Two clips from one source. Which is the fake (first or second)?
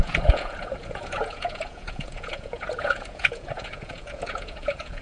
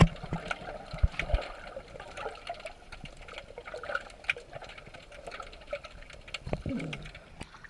first